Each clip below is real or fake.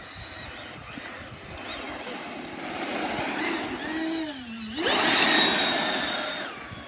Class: real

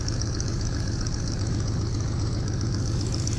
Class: fake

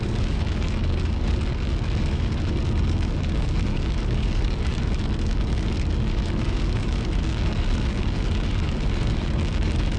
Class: fake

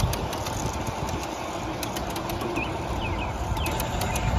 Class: real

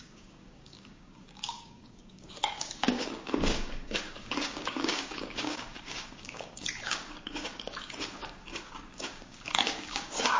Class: fake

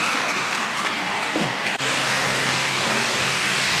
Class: fake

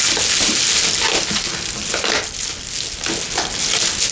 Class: real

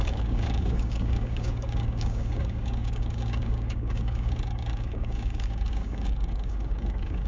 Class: fake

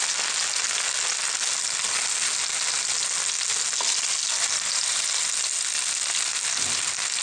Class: real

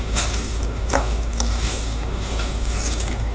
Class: fake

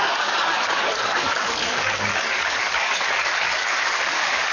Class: fake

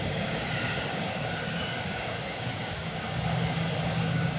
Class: fake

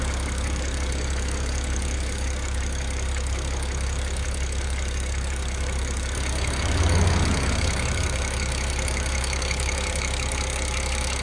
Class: fake